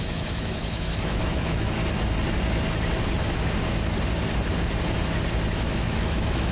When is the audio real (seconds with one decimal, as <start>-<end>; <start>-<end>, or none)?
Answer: 1.8-5.5